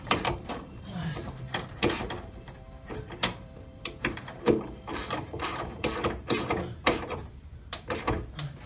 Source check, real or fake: fake